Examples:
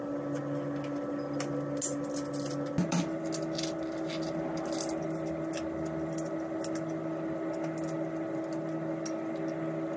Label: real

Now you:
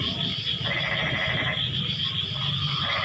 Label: real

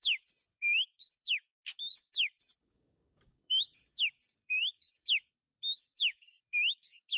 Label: fake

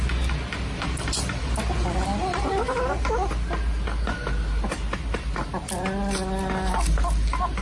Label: real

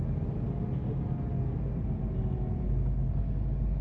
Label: real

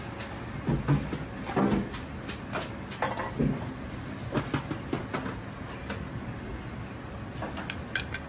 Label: real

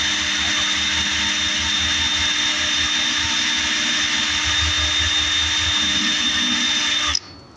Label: real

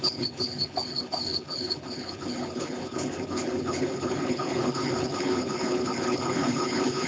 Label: fake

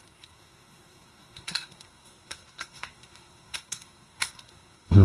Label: fake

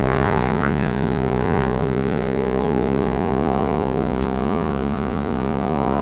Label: fake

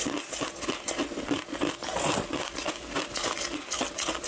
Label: real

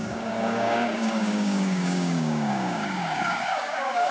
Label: fake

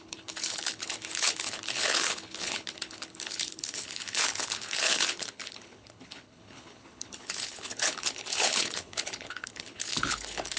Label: fake